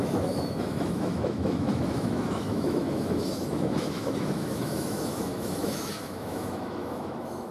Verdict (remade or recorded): remade